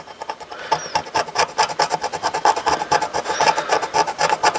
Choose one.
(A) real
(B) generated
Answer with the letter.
A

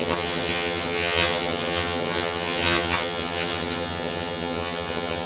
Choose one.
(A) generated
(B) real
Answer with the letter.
A